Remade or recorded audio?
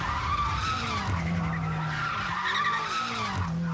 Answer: recorded